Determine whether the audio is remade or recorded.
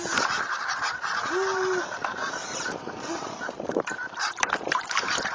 remade